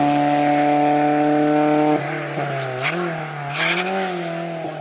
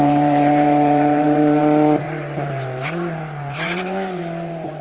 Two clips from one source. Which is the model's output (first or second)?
second